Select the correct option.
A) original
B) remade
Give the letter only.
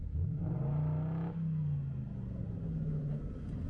A